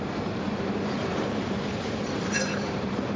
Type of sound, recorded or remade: remade